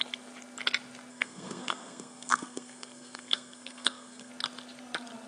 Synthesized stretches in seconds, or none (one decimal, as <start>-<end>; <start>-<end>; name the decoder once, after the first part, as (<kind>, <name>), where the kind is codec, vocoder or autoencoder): 1.1-4.3 (codec, SNAC)